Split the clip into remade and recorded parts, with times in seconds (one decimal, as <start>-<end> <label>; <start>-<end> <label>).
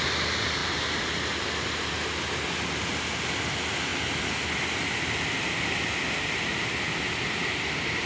0.0-0.6 recorded; 0.6-1.9 remade; 1.9-8.1 recorded